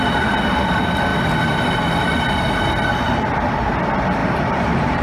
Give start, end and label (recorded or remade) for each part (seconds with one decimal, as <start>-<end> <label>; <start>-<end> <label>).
0.0-4.2 recorded; 4.2-5.0 remade